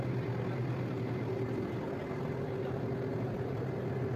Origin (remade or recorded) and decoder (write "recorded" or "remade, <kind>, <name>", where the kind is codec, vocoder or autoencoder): recorded